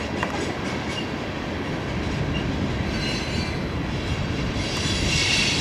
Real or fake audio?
real